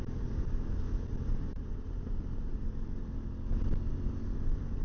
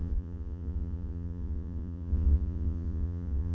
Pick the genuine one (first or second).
first